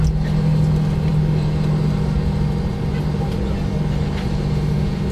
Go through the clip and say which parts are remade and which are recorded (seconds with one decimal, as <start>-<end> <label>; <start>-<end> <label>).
0.0-5.1 recorded